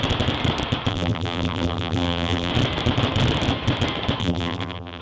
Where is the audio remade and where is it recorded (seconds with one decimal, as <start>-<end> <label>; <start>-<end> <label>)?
0.0-0.9 recorded; 0.9-2.5 remade; 2.5-4.2 recorded; 4.2-5.0 remade